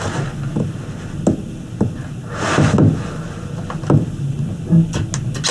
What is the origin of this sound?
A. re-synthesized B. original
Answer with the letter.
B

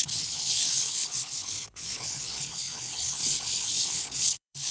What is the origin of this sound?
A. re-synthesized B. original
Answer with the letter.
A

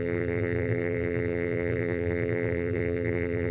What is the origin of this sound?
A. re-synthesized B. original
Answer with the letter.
A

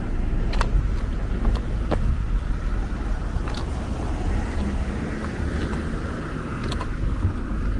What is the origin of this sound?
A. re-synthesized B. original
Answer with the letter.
B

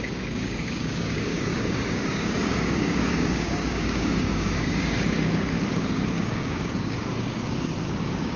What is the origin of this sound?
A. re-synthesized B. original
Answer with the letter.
A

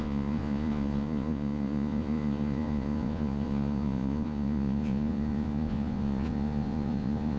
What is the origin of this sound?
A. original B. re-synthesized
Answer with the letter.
B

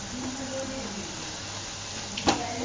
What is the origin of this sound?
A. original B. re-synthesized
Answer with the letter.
A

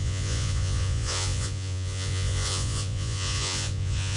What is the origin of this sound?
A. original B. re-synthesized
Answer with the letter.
B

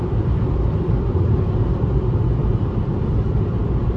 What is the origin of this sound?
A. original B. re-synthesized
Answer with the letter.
B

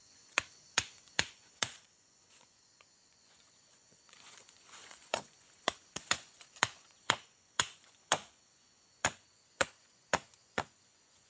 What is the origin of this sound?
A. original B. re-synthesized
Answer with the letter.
B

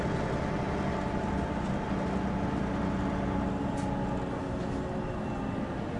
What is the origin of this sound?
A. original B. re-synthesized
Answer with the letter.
A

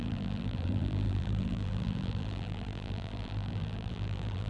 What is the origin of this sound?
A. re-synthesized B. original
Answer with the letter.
A